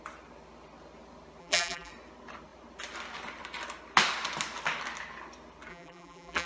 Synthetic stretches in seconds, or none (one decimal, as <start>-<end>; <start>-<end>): 1.4-1.9; 5.7-6.5